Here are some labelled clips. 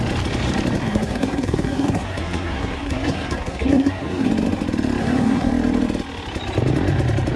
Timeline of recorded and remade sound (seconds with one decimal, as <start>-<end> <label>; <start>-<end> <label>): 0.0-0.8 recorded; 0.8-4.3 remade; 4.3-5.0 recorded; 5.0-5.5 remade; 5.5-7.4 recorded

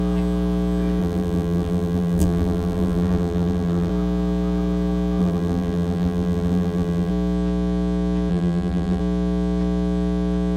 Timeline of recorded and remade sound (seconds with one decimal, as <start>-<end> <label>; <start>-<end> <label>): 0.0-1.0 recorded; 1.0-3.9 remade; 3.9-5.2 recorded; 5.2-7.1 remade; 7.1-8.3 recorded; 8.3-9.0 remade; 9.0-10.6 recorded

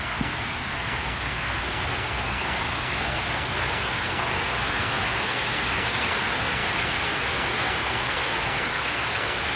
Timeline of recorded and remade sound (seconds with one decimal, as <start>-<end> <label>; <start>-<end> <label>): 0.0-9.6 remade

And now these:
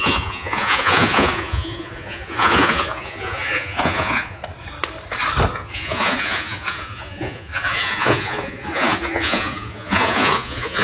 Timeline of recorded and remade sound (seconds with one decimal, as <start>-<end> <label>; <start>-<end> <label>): 0.0-4.4 remade; 4.4-5.5 recorded; 5.5-10.8 remade

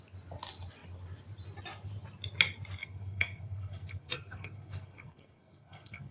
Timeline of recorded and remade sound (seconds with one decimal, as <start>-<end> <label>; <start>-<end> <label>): 0.0-2.8 recorded; 2.8-6.1 remade

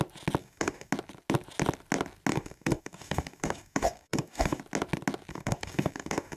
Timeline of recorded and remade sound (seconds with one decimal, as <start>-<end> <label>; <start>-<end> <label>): 0.0-0.4 recorded; 0.4-0.9 remade; 0.9-2.3 recorded; 2.3-4.6 remade; 4.6-5.3 recorded; 5.3-6.4 remade